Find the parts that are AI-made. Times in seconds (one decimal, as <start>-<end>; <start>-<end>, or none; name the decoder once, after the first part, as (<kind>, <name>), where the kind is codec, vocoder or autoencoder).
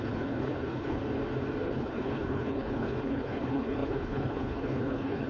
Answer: 0.0-1.0 (codec, HILCodec); 1.6-5.3